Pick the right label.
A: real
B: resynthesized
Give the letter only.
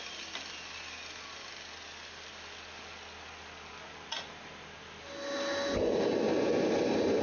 A